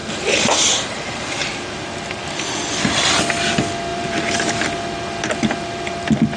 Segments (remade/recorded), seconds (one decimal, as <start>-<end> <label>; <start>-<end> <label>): 0.0-3.2 remade; 3.2-3.9 recorded; 3.9-4.5 remade; 4.5-6.4 recorded